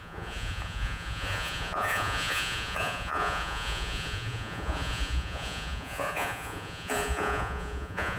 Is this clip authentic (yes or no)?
no